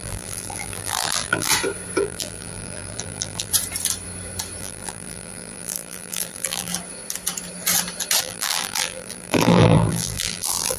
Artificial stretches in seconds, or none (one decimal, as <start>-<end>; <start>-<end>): 0.0-1.5; 2.0-3.5; 4.6-6.7; 8.2-10.8